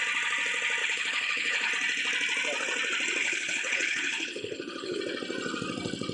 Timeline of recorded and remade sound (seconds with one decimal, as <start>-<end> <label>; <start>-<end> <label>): 0.0-0.8 recorded; 0.8-1.7 remade; 1.7-3.2 recorded; 3.2-5.0 remade; 5.0-6.1 recorded